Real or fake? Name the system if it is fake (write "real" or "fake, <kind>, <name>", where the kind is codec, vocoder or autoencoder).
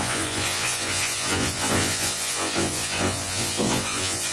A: fake, vocoder, Vocos